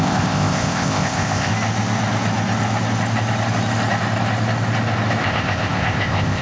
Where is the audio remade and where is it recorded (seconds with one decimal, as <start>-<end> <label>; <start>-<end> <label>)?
0.0-1.5 remade; 1.5-5.2 recorded; 5.2-6.4 remade